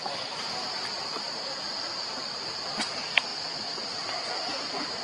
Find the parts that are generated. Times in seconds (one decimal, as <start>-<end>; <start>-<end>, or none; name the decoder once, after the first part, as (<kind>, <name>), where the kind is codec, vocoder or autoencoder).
0.0-5.0 (vocoder, BigVGAN v2)